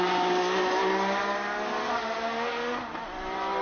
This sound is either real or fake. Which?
real